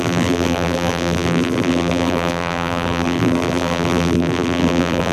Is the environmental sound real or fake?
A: fake